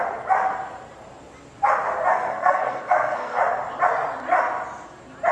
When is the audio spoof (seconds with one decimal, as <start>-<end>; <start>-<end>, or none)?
2.1-3.4